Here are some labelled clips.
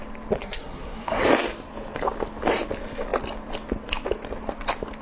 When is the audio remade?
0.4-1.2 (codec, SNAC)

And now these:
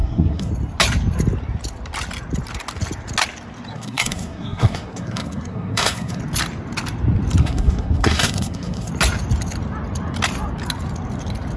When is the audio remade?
0.0-0.5 (codec, SNAC); 3.7-6.2; 7.4-8.9